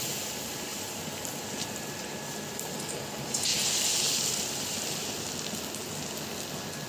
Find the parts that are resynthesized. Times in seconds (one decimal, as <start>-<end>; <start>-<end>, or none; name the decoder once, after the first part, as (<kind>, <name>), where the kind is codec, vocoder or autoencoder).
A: 0.7-2.9 (vocoder, BigVGAN v2); 3.5-5.5

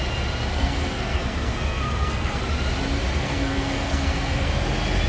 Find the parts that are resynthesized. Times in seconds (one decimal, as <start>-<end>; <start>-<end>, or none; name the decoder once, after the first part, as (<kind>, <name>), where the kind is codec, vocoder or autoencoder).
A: 0.5-2.4 (codec, SNAC); 3.2-4.5

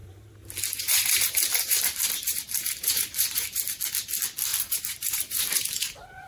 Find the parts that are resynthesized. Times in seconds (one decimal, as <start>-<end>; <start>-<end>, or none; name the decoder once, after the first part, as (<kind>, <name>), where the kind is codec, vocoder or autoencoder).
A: 0.0-3.8 (vocoder, BigVGAN v2); 4.5-6.3

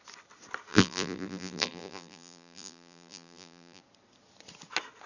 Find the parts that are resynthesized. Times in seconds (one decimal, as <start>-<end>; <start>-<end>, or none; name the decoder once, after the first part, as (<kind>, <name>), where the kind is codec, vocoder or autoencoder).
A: 0.7-3.8 (vocoder, BigVGAN v2)

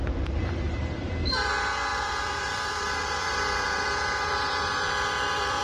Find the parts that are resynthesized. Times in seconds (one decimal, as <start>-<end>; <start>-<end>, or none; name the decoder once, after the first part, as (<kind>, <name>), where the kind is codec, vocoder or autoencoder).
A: 0.0-1.5 (vocoder, BigVGAN v2); 1.9-5.6

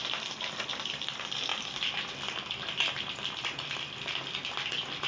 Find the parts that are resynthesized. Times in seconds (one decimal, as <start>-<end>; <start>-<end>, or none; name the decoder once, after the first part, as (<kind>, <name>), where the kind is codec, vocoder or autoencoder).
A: none